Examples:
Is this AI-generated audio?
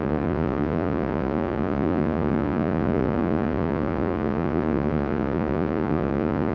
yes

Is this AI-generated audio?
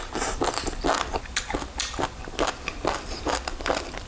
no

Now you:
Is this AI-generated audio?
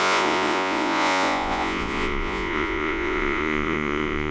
yes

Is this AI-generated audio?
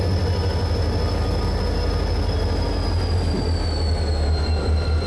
no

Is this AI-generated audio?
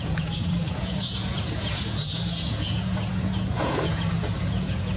yes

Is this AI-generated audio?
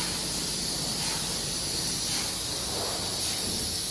no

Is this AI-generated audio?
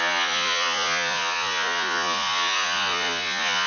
yes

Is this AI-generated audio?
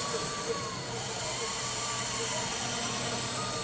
no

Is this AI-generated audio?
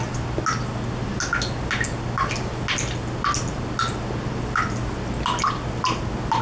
no